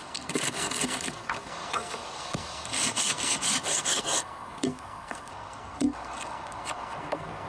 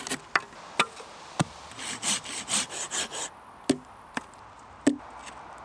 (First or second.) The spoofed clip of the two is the first